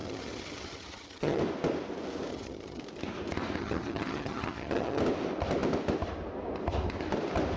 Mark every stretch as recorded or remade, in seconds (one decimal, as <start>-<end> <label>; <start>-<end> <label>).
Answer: 0.0-1.4 remade; 1.4-2.3 recorded; 2.3-2.8 remade; 2.8-3.6 recorded; 3.6-5.0 remade; 5.0-7.6 recorded